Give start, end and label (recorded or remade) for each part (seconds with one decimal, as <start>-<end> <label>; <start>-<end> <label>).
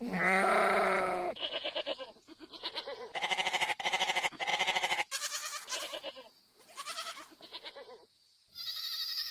0.0-9.3 remade